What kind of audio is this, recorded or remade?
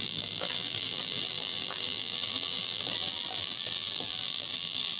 remade